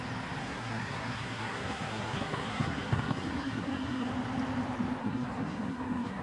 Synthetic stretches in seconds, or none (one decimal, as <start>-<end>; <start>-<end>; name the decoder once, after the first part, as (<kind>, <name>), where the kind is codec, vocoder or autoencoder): 0.4-4.1 (codec, SNAC); 5.0-6.2